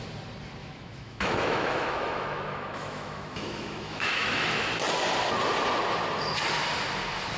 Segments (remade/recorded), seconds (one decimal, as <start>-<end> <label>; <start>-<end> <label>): 0.0-0.6 recorded; 0.6-4.7 remade; 4.7-7.4 recorded